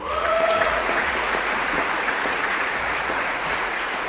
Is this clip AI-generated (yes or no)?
yes